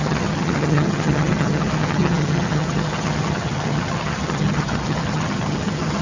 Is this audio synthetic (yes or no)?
yes